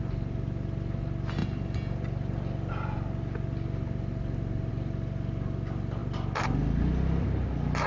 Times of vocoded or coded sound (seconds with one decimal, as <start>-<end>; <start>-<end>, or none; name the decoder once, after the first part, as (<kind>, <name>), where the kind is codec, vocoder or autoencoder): none